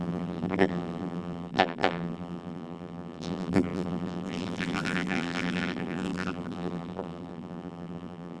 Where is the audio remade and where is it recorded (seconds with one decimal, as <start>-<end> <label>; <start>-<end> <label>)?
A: 0.0-8.4 remade